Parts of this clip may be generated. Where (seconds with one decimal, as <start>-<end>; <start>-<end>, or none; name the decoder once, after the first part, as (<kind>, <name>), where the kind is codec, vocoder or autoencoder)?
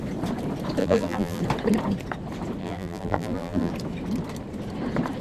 0.8-1.4 (vocoder, BigVGAN v2); 2.6-3.7